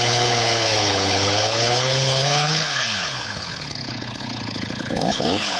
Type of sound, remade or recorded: remade